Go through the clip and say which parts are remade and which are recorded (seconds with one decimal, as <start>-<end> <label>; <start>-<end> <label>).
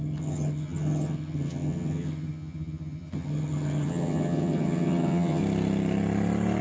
0.0-5.4 remade; 5.4-6.6 recorded